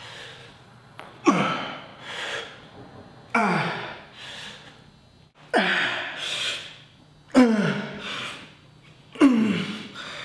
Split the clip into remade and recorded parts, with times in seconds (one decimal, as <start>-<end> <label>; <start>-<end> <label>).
0.0-0.4 recorded; 0.4-1.3 remade; 1.3-10.2 recorded